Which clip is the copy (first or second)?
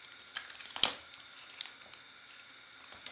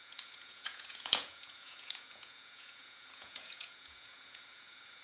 second